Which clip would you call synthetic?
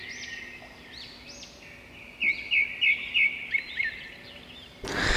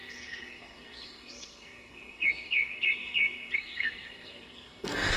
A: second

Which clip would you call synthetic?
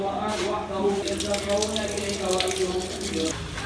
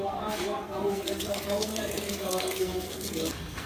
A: second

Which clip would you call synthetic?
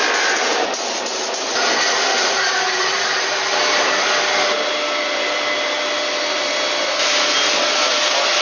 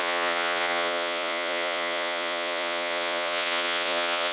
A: second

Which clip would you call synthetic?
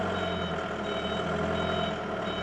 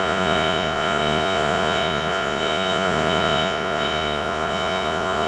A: second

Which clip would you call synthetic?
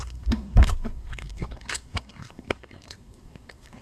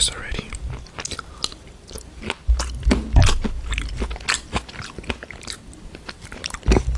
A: first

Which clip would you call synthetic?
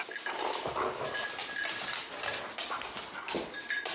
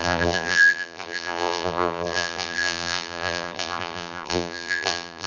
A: second